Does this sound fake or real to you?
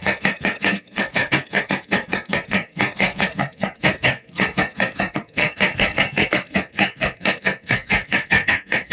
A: fake